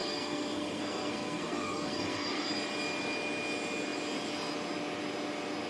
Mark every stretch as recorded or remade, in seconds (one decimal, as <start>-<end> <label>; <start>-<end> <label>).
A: 0.0-2.5 remade; 2.5-5.7 recorded